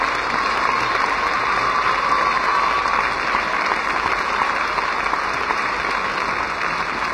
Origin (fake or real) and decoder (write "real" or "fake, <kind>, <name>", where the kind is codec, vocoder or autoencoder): real